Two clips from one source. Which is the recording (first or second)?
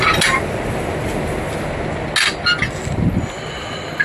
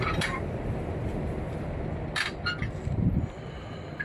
first